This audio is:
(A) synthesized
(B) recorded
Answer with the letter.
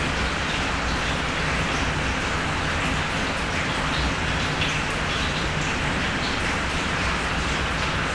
B